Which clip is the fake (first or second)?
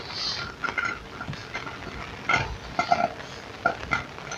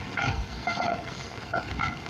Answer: second